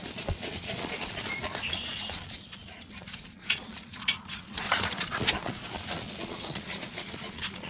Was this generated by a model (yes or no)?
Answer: yes